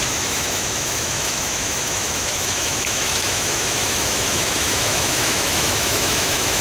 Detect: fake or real fake